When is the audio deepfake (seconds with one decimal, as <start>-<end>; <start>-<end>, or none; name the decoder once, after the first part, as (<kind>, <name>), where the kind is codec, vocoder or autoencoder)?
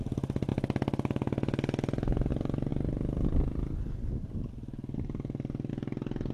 none